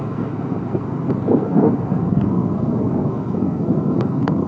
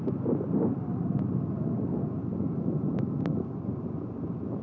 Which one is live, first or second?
second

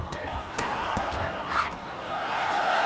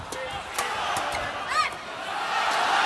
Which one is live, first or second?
second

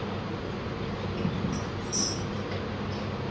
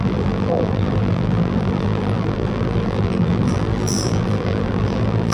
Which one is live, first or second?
first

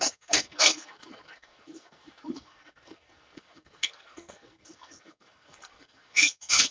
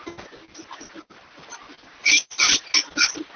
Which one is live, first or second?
second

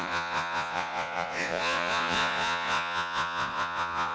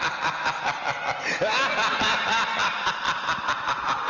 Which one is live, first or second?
second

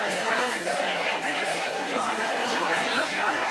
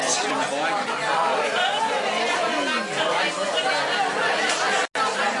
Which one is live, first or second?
second